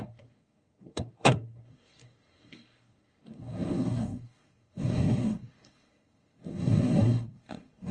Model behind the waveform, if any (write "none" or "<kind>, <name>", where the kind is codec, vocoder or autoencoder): codec, SNAC